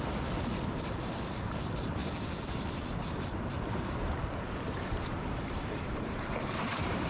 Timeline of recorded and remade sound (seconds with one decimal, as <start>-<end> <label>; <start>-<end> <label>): 0.0-2.0 remade; 2.0-2.5 recorded; 2.5-7.1 remade